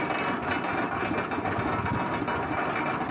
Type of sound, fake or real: real